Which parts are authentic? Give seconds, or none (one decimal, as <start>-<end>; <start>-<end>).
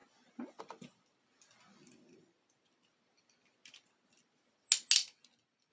0.0-5.7